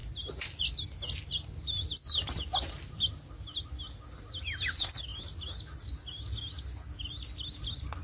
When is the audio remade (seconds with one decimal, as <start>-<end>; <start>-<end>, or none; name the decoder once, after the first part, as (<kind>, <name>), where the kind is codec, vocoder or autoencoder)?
none